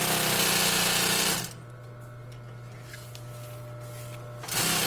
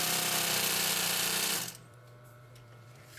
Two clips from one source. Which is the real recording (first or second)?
first